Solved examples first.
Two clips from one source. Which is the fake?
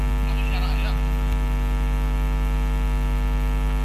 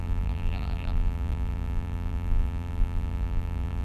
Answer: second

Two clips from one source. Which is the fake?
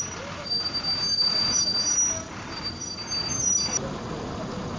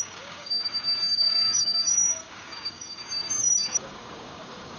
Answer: second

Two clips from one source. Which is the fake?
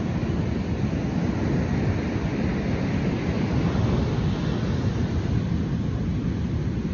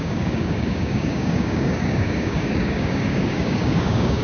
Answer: second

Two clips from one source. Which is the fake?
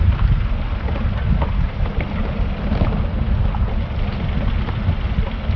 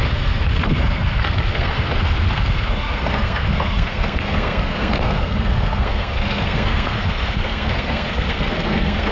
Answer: second